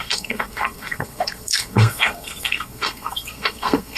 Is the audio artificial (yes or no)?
yes